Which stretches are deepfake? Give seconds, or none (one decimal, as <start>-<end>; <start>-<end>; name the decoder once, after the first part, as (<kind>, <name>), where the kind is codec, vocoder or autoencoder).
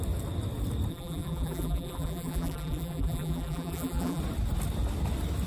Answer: 0.9-4.2 (vocoder, BigVGAN v2)